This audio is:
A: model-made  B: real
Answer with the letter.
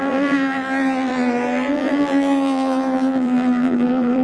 A